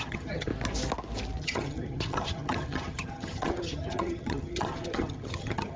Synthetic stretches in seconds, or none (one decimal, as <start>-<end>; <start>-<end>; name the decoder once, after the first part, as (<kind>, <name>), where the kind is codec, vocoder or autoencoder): 0.0-0.5 (vocoder, HiFi-GAN); 1.4-5.8